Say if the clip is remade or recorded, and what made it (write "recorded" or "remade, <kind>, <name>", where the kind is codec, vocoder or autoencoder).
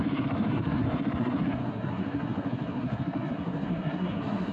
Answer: remade, codec, SNAC